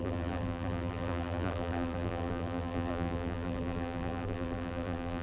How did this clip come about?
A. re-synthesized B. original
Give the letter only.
A